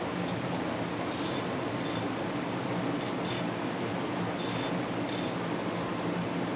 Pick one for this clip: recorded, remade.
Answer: recorded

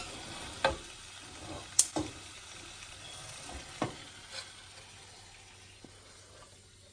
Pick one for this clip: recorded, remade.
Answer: recorded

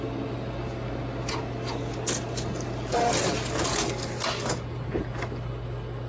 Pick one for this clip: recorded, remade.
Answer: recorded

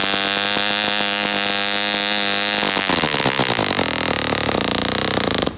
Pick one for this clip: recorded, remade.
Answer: recorded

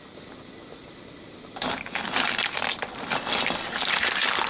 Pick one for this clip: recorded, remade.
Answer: recorded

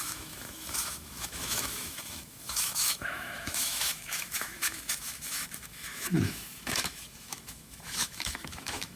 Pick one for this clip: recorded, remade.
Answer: remade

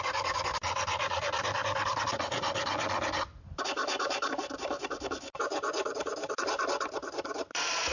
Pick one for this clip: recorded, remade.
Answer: recorded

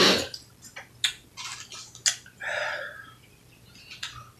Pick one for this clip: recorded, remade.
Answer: recorded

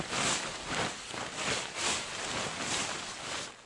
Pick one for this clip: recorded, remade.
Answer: recorded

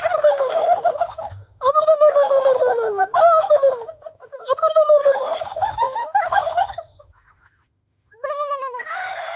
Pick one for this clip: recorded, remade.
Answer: remade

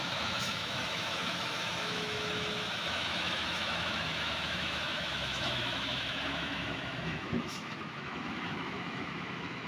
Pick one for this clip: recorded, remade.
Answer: remade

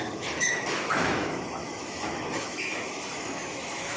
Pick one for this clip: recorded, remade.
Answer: remade